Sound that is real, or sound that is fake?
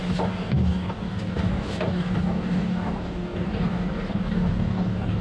fake